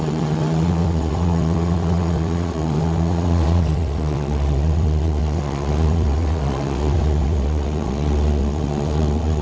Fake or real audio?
fake